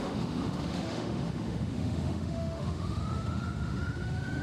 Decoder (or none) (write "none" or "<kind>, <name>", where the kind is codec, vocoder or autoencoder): autoencoder, DAC-VAE